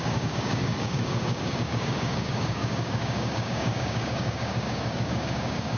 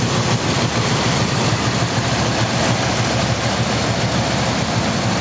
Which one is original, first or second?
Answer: second